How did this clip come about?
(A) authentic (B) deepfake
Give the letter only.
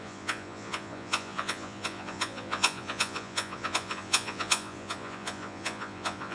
B